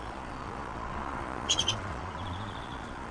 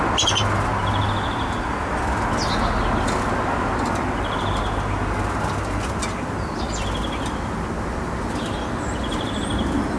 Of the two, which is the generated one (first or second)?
first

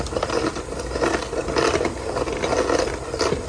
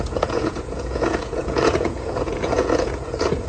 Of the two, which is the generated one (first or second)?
second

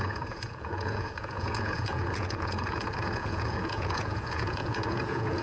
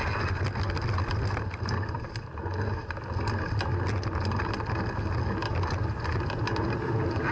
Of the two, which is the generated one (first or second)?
first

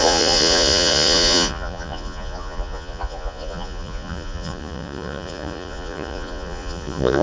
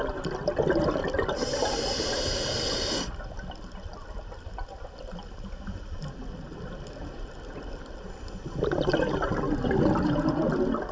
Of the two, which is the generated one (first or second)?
first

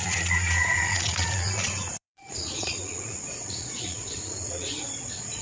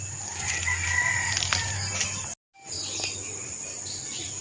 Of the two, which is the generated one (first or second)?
first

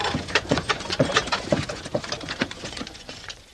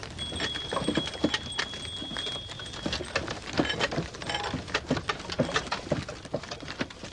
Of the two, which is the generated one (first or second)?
first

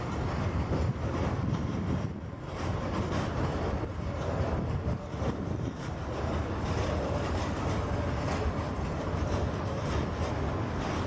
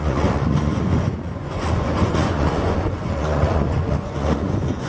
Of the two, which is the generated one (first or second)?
second